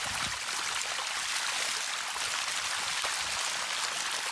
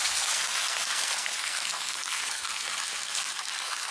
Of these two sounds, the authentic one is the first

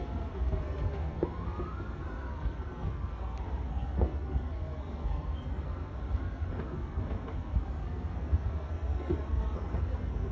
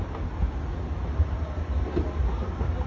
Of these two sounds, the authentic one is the second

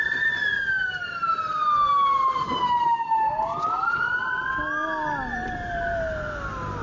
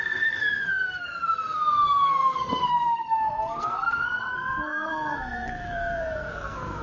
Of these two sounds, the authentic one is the first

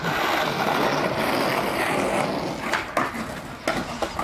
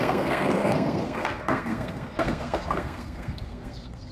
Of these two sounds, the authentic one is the first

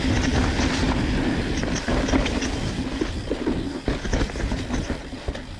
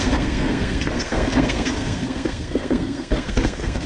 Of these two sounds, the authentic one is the first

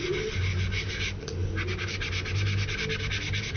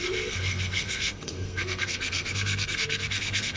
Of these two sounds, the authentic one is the first